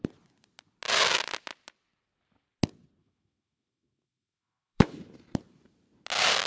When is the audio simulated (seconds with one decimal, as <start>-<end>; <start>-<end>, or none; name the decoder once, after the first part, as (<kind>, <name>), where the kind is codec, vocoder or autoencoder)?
3.0-4.9 (autoencoder, DAC-VAE)